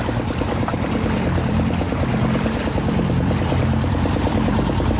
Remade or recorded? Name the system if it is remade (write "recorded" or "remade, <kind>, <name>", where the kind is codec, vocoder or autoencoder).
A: remade, vocoder, BigVGAN v2